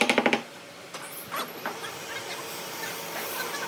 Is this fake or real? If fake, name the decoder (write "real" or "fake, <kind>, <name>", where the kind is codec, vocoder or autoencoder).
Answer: fake, vocoder, BigVGAN v2